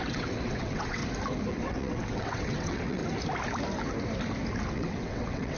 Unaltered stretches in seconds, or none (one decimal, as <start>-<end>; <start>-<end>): 1.0-1.5; 3.0-4.7